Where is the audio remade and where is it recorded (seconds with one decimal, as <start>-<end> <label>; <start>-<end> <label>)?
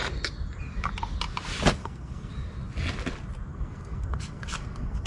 0.0-1.8 recorded; 1.8-2.3 remade; 2.3-3.5 recorded; 3.5-5.1 remade